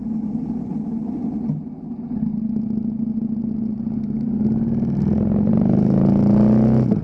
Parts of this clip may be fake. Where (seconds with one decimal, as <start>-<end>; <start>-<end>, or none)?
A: none